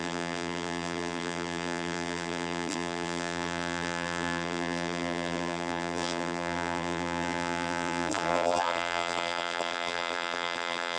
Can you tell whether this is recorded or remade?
remade